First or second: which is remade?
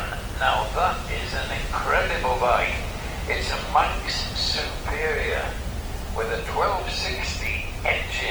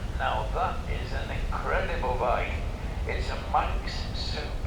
second